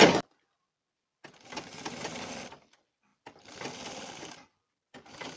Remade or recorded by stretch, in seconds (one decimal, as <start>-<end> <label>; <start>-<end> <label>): 0.0-5.4 recorded